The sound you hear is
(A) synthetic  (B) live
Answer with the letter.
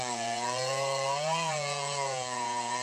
A